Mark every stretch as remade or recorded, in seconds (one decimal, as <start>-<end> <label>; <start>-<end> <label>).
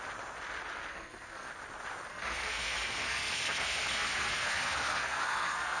0.0-0.9 recorded; 0.9-1.5 remade; 1.5-2.1 recorded; 2.1-5.8 remade